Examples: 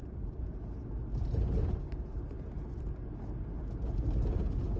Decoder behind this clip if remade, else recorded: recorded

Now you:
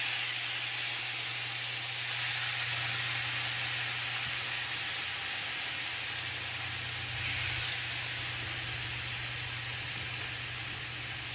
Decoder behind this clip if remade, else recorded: recorded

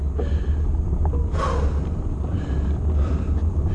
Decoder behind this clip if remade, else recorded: recorded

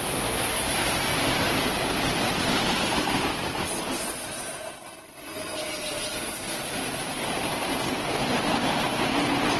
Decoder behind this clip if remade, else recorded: recorded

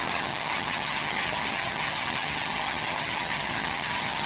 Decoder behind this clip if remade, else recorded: remade, vocoder, HiFi-GAN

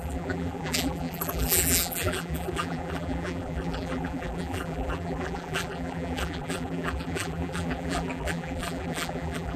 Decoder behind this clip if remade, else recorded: remade, vocoder, BigVGAN v2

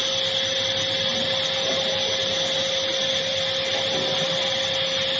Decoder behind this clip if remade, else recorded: recorded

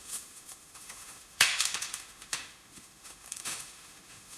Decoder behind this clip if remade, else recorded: remade, autoencoder, DAC-VAE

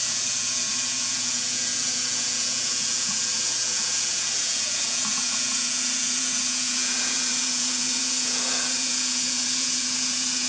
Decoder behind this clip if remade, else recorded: remade, vocoder, Vocos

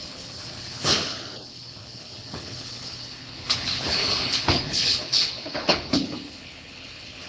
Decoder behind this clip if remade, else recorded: remade, codec, HILCodec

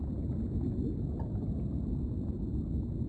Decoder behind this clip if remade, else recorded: recorded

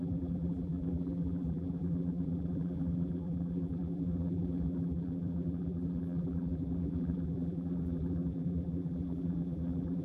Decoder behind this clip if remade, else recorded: remade, vocoder, BigVGAN v2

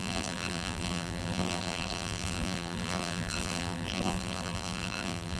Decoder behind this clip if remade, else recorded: remade, vocoder, BigVGAN v2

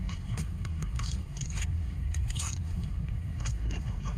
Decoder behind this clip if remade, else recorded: remade, codec, SNAC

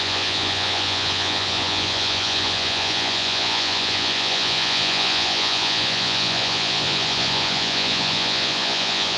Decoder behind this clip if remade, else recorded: remade, vocoder, Vocos